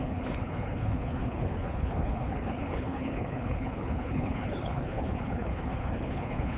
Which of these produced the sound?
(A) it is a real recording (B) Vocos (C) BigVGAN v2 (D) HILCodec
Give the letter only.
D